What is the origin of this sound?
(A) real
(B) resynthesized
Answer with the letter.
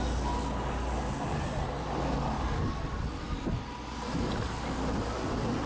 A